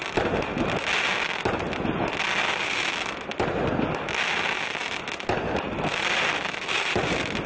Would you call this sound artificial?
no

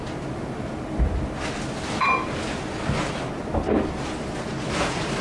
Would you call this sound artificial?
no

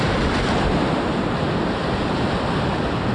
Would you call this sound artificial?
no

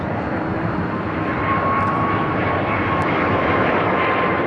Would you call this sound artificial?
yes